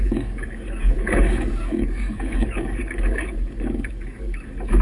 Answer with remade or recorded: remade